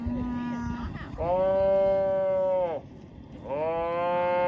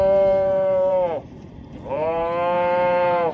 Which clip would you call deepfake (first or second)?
second